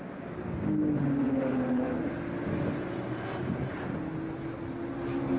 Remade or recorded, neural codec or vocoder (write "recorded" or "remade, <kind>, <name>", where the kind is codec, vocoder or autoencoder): recorded